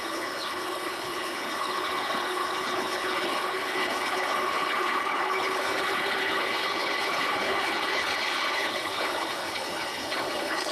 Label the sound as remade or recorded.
remade